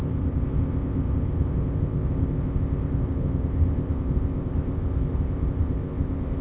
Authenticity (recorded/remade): remade